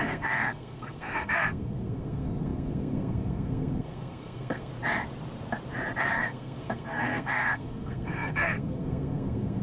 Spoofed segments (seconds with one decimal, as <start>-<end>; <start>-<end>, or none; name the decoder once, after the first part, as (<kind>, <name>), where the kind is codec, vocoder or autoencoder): 0.0-4.7 (codec, SNAC); 6.0-9.6